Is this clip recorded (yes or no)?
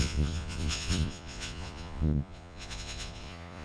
no